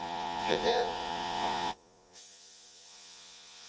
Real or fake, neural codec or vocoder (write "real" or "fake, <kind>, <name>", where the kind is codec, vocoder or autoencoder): fake, vocoder, Vocos